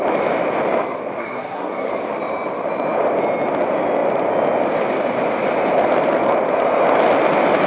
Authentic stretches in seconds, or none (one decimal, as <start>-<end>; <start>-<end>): 0.0-1.2; 1.9-7.7